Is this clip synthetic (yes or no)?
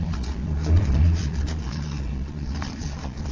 yes